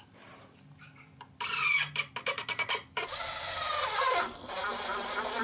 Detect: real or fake real